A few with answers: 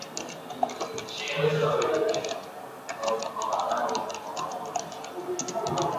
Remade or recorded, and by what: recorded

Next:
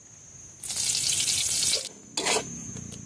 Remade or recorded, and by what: recorded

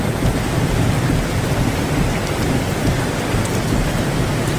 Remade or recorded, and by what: remade, vocoder, BigVGAN v2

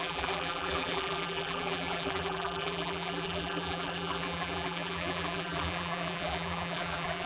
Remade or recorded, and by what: remade, vocoder, BigVGAN v2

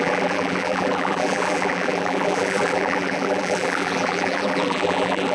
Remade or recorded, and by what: remade, vocoder, BigVGAN v2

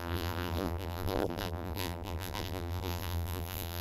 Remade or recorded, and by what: remade, vocoder, BigVGAN v2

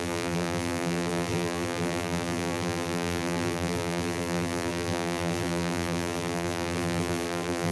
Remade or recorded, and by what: remade, vocoder, BigVGAN v2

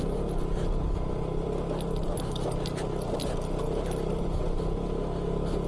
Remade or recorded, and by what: recorded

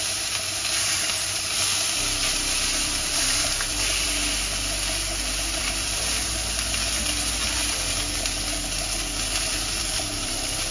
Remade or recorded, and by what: remade, vocoder, BigVGAN v2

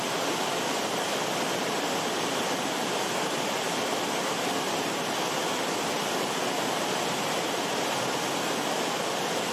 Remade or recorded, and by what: remade, vocoder, BigVGAN v2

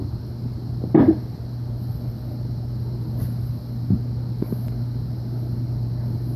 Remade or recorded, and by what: remade, vocoder, BigVGAN v2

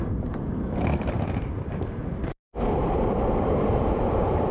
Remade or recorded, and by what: remade, vocoder, BigVGAN v2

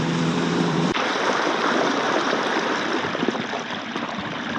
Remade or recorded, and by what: remade, vocoder, BigVGAN v2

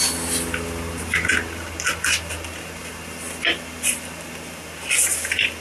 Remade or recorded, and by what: recorded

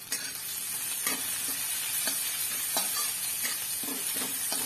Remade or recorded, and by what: recorded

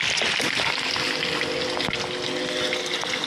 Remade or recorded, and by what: recorded